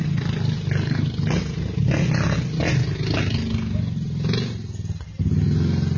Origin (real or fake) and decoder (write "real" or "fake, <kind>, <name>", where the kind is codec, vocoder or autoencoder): real